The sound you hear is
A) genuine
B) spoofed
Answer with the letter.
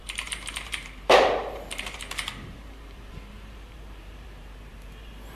B